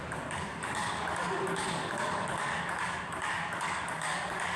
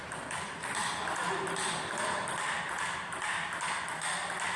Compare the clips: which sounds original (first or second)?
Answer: second